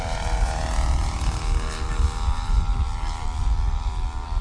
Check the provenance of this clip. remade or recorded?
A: recorded